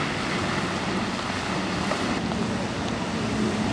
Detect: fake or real real